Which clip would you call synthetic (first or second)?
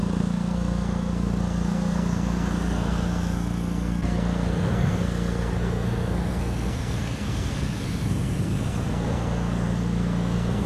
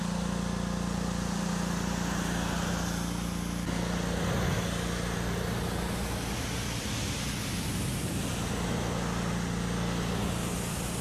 first